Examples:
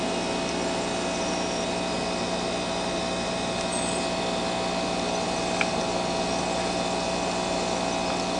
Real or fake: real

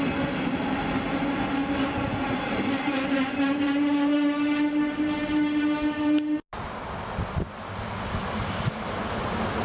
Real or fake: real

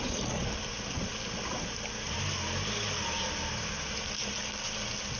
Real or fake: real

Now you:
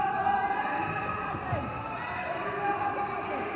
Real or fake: real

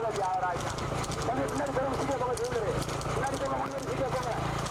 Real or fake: real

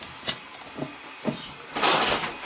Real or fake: real